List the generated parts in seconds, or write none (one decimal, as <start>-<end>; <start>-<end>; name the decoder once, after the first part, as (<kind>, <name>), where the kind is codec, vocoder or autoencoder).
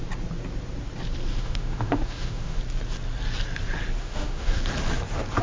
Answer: 1.3-2.6 (autoencoder, DAC-VAE); 4.0-4.6